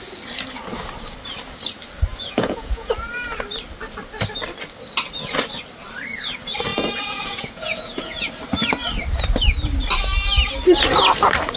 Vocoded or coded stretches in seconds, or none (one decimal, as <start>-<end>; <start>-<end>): 2.1-2.9; 6.7-8.3